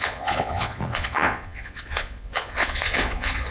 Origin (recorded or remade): remade